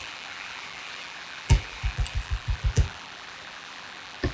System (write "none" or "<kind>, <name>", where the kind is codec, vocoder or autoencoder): vocoder, BigVGAN v2